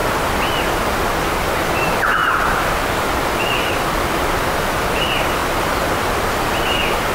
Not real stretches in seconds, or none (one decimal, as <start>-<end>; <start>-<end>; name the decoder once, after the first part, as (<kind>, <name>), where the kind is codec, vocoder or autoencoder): none